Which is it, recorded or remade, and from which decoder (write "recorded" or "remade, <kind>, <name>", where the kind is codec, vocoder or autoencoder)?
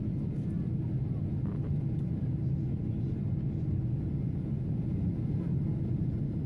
recorded